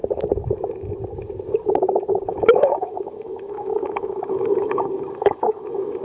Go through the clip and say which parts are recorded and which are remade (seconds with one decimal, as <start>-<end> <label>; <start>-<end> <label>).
0.0-2.3 recorded; 2.3-6.0 remade